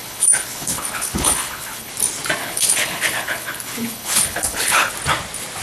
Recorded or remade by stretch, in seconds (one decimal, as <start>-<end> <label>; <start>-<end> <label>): 0.0-1.9 remade; 1.9-2.4 recorded; 2.4-4.9 remade; 4.9-5.6 recorded